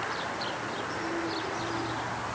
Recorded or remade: recorded